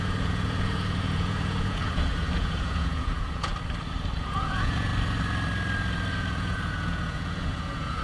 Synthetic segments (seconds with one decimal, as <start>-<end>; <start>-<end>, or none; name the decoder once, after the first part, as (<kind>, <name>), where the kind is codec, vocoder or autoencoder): 0.0-3.5 (vocoder, Vocos); 4.2-4.9; 6.1-8.0